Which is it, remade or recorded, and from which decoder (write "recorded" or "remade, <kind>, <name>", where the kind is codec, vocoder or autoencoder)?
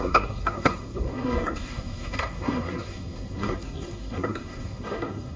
remade, codec, SNAC